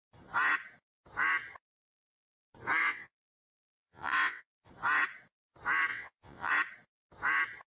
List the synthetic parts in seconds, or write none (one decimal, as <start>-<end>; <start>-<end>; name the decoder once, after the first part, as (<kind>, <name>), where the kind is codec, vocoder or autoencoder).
2.8-4.7 (vocoder, WaveNeXt); 5.9-6.5